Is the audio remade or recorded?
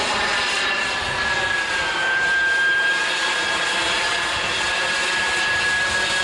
recorded